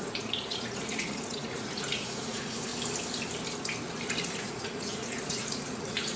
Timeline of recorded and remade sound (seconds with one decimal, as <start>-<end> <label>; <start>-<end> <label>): 0.0-2.7 remade; 2.7-4.2 recorded; 4.2-6.2 remade